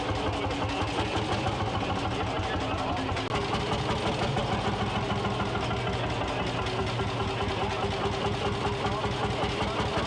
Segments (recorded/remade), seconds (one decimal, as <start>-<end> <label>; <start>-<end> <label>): 0.0-10.1 recorded